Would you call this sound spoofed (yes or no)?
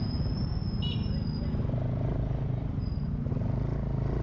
no